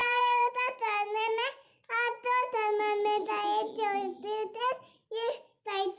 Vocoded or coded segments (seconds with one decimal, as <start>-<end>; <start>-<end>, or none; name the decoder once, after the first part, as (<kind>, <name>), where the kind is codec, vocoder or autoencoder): 0.0-0.5 (vocoder, BigVGAN v2); 5.0-5.6

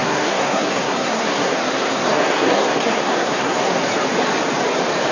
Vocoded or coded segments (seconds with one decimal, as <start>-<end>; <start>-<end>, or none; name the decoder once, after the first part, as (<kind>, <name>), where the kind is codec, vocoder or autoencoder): 0.0-3.8 (codec, SNAC)

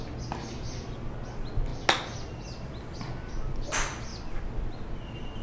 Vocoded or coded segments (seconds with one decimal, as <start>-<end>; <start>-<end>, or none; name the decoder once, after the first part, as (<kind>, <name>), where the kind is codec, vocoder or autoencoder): none

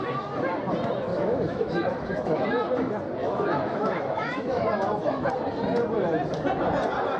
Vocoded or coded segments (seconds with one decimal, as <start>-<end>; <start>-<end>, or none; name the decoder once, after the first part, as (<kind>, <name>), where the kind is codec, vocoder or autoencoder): 1.1-2.5 (autoencoder, DAC-VAE); 3.2-5.3

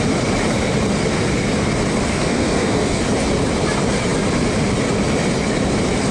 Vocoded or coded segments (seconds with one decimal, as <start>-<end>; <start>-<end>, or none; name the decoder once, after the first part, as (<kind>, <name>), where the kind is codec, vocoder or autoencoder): 2.1-3.0 (codec, SNAC)

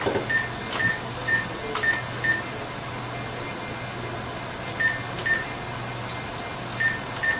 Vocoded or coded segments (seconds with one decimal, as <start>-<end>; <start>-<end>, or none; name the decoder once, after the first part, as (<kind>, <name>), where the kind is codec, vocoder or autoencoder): 0.9-1.4 (codec, DAC)

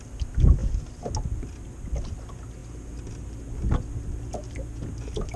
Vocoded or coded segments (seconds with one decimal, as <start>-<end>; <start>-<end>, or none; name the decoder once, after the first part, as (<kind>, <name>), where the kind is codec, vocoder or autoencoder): none

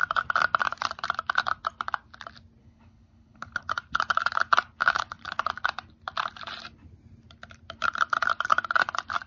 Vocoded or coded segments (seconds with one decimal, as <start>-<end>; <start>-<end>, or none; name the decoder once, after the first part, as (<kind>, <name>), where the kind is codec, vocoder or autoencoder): 2.6-3.7 (codec, HILCodec); 4.8-5.5